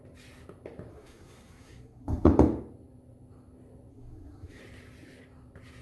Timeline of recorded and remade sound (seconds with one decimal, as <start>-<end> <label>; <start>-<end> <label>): 0.0-0.9 recorded; 0.9-2.3 remade; 2.3-3.9 recorded; 3.9-4.6 remade; 4.6-5.8 recorded

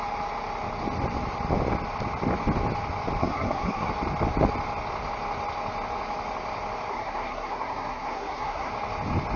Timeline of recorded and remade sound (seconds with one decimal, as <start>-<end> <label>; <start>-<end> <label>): 0.0-3.2 recorded; 3.2-3.9 remade; 3.9-6.9 recorded; 6.9-8.7 remade; 8.7-9.4 recorded

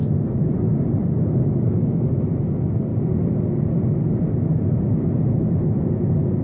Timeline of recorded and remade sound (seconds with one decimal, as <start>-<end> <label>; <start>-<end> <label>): 0.0-6.4 recorded

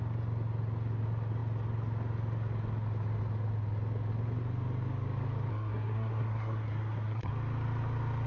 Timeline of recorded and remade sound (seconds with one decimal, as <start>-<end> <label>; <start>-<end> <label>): 0.0-5.5 recorded; 5.5-7.3 remade; 7.3-8.3 recorded

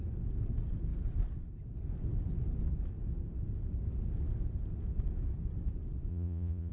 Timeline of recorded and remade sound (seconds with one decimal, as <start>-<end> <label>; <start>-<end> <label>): 0.0-6.1 recorded; 6.1-6.7 remade